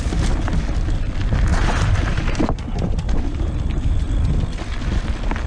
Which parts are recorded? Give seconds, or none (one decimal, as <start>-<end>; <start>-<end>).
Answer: 0.0-1.5; 3.5-5.5